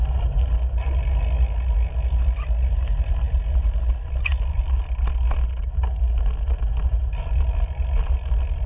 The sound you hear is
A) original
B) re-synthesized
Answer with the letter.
A